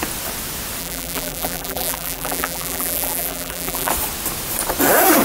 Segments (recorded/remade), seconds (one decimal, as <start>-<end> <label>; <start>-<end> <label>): 0.0-0.8 recorded; 0.8-3.9 remade; 3.9-5.2 recorded